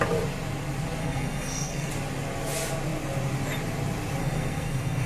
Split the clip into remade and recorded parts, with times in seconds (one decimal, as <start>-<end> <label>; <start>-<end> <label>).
0.0-1.0 recorded; 1.0-1.9 remade; 1.9-4.2 recorded; 4.2-5.1 remade